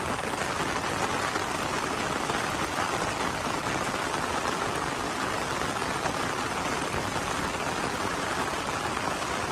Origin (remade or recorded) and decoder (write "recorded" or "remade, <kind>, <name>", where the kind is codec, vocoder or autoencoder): recorded